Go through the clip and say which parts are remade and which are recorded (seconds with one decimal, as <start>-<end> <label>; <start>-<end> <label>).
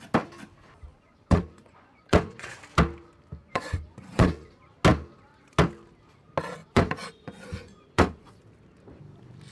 0.0-0.9 recorded; 0.9-2.6 remade; 2.6-3.4 recorded; 3.4-4.5 remade; 4.5-6.6 recorded; 6.6-8.4 remade; 8.4-9.5 recorded